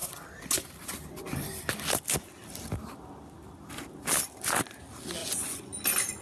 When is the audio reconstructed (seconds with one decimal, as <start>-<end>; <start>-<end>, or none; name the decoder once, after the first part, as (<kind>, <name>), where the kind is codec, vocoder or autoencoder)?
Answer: 5.2-5.7 (vocoder, Vocos)